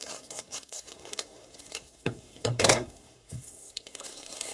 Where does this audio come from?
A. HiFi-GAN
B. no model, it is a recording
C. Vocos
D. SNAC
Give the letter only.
D